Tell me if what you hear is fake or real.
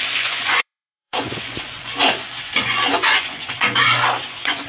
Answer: fake